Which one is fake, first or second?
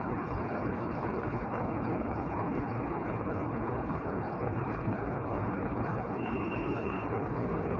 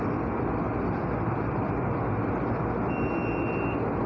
first